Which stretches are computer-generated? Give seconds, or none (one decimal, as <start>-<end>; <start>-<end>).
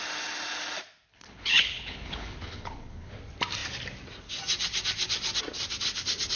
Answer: 1.1-3.1